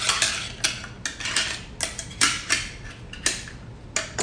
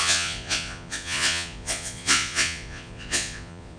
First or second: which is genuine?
first